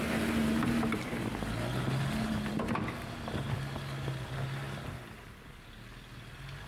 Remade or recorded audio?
recorded